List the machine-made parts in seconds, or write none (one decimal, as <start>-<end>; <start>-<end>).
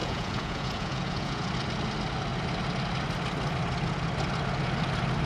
0.0-1.5